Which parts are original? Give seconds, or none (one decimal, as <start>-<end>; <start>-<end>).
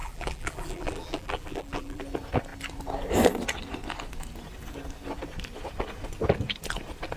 2.0-7.2